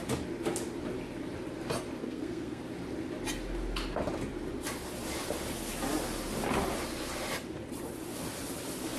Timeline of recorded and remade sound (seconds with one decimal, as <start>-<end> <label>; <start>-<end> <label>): 0.0-2.0 recorded; 2.0-2.6 remade; 2.6-9.0 recorded

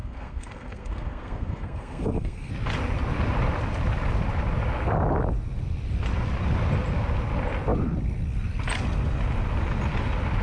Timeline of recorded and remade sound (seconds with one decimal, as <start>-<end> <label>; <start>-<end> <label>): 0.0-2.5 remade; 2.5-10.4 recorded

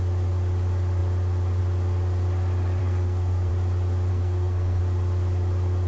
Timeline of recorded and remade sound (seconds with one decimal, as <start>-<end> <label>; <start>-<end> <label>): 0.0-2.8 recorded; 2.8-3.5 remade; 3.5-4.1 recorded; 4.1-4.8 remade; 4.8-5.9 recorded

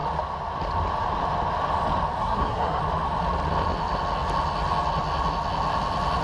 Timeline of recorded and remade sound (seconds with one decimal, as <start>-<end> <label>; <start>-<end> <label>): 0.0-2.2 recorded; 2.2-2.8 remade; 2.8-6.2 recorded

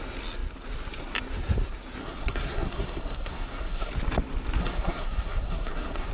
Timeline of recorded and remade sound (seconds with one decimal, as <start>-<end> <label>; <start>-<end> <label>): 0.0-2.0 recorded; 2.0-3.9 remade; 3.9-4.6 recorded; 4.6-6.1 remade

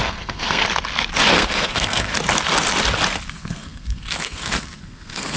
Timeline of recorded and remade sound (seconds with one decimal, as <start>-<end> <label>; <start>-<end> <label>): 0.0-0.6 remade; 0.6-1.3 recorded; 1.3-2.1 remade; 2.1-3.3 recorded; 3.3-5.4 remade

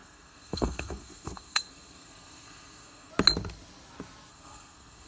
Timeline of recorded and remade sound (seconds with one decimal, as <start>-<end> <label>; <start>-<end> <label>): 0.0-3.1 remade; 3.1-4.3 recorded; 4.3-5.1 remade

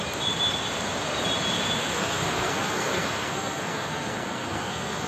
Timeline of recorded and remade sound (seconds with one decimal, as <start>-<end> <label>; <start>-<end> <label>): 0.0-1.8 recorded; 1.8-5.1 remade